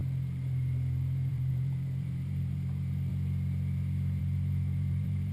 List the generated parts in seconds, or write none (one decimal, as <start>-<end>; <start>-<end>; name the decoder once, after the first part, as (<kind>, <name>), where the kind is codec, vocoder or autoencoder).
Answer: 0.0-3.1 (vocoder, BigVGAN v2); 4.2-5.3